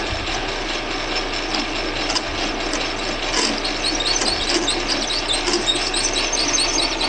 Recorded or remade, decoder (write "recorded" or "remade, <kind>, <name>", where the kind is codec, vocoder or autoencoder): recorded